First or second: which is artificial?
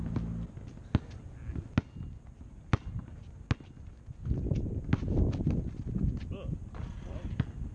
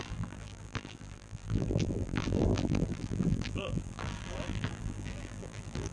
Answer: second